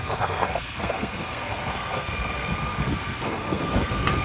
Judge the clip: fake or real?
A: fake